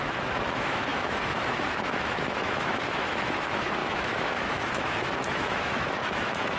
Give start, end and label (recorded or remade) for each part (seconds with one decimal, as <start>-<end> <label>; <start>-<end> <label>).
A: 0.0-6.6 remade